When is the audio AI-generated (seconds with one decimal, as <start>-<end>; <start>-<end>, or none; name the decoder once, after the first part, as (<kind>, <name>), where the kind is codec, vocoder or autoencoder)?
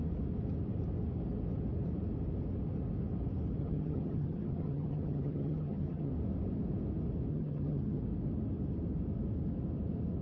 3.6-6.1 (vocoder, HiFi-GAN); 7.3-8.0